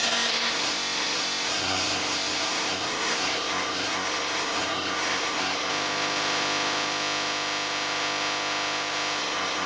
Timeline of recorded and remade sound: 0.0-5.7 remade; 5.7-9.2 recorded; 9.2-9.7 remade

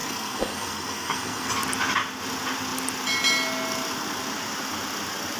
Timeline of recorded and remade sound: 0.0-1.5 remade; 1.5-5.4 recorded

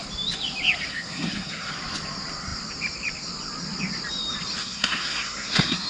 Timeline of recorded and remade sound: 0.0-0.9 recorded; 0.9-1.7 remade; 1.7-4.6 recorded; 4.6-5.9 remade